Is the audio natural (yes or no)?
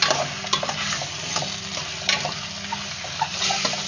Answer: no